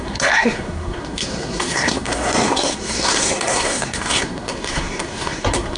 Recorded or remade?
remade